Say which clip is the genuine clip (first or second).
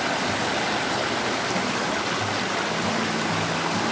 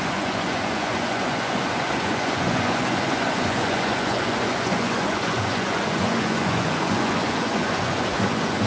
first